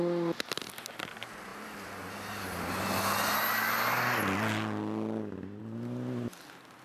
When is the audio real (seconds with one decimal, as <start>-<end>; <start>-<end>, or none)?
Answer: 0.0-6.8